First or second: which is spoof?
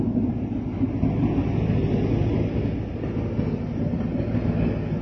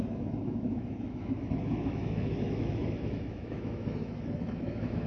second